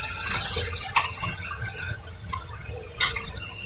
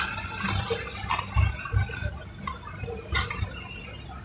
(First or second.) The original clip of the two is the second